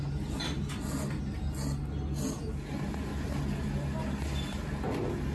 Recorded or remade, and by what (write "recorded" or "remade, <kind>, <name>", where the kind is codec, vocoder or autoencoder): recorded